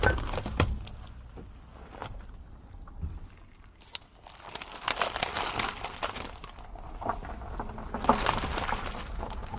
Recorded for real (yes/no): yes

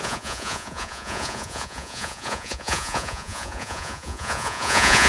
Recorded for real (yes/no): no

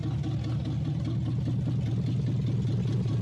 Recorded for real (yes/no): yes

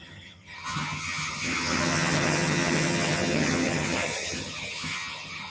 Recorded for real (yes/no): no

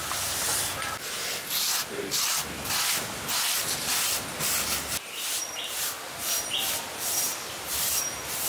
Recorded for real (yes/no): yes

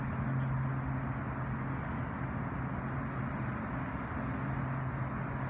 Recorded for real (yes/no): yes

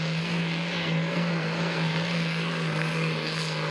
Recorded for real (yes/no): no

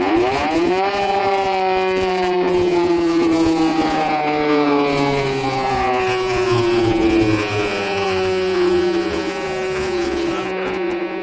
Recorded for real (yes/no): no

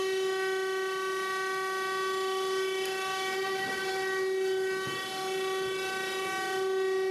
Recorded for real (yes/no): yes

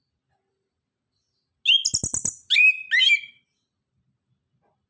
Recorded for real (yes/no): yes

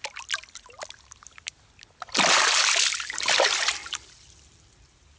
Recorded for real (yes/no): yes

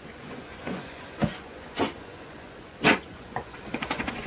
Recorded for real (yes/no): no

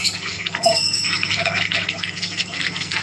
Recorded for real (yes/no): no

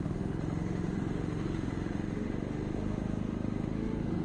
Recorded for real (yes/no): no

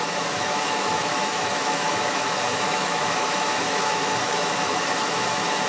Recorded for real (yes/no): no